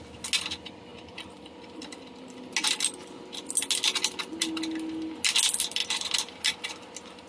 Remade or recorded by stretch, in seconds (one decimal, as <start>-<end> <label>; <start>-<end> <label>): 0.0-7.3 recorded